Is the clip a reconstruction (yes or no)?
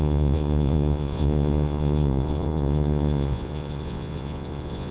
yes